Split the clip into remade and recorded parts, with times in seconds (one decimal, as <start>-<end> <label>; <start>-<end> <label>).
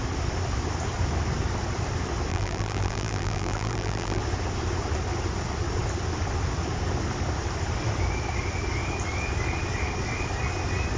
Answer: 0.0-2.3 recorded; 2.3-4.2 remade; 4.2-11.0 recorded